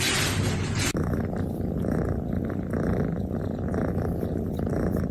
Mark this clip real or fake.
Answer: real